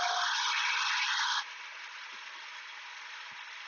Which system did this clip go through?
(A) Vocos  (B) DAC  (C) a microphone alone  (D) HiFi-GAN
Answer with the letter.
C